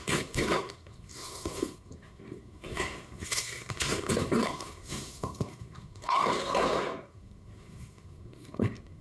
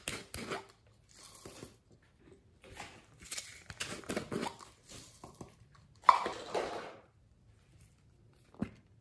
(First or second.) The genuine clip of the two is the second